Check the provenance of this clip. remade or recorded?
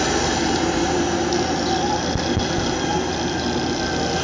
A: recorded